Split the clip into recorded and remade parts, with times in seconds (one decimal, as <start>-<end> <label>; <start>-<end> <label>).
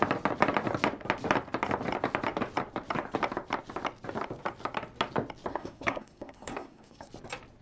0.0-5.5 recorded; 5.5-7.1 remade; 7.1-7.6 recorded